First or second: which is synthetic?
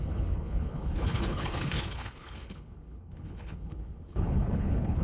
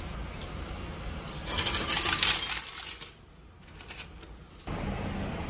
first